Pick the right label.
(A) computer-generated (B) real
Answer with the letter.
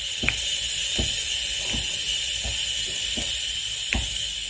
B